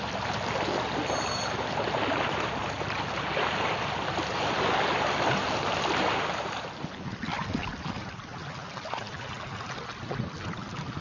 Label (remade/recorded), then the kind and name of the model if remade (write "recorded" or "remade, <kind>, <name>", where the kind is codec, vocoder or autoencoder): recorded